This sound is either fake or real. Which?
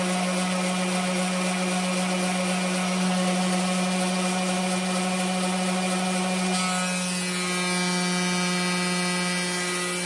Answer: real